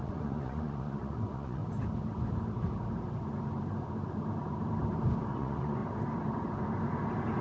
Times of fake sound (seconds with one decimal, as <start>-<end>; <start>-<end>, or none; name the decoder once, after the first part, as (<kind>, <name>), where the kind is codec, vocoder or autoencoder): 0.0-1.6 (vocoder, Vocos); 5.3-5.8

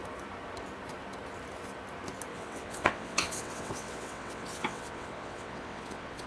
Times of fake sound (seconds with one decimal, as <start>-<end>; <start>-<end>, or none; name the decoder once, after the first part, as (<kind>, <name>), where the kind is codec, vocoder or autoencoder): 2.3-6.3 (vocoder, WaveNeXt)

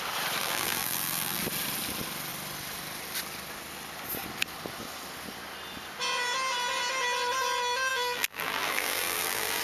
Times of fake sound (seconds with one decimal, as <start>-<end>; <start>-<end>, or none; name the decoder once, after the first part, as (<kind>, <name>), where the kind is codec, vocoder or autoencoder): 0.4-1.4 (vocoder, BigVGAN v2); 7.9-9.6

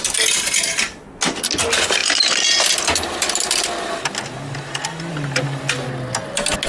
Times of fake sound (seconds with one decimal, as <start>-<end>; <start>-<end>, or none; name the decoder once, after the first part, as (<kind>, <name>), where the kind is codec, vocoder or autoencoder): none

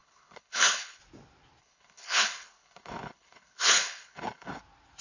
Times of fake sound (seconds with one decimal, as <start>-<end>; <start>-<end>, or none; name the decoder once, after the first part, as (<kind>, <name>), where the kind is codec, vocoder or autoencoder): 0.0-1.0 (codec, HILCodec); 1.6-4.6